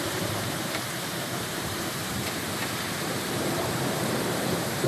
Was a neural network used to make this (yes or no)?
yes